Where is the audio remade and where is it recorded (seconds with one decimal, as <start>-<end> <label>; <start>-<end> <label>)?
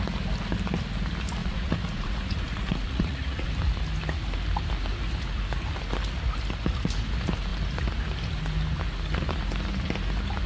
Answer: 0.0-1.4 recorded; 1.4-3.5 remade; 3.5-10.5 recorded